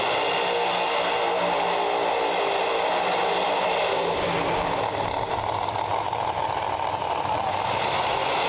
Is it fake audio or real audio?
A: real